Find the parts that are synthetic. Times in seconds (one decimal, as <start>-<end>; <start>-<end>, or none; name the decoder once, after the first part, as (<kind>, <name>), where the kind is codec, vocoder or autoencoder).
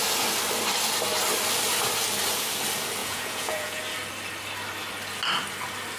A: 3.0-3.8 (vocoder, Vocos)